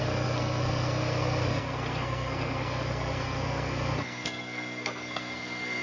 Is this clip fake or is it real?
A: fake